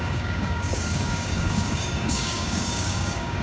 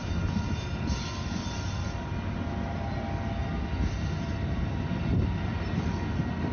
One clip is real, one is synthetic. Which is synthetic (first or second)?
first